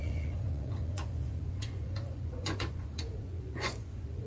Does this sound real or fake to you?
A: fake